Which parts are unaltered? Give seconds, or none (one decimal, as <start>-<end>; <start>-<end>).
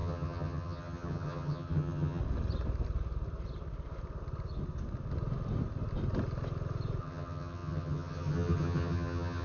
2.2-7.0